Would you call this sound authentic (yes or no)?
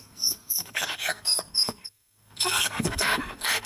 no